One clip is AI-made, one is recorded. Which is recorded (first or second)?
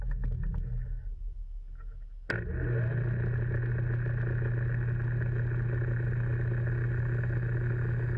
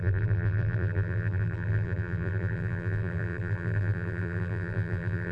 first